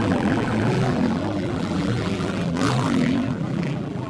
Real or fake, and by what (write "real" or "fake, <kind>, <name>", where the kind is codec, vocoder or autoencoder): fake, vocoder, BigVGAN v2